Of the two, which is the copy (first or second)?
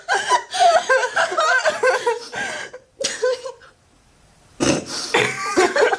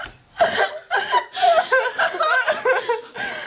first